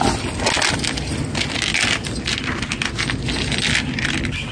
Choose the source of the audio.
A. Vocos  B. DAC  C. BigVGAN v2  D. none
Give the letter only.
D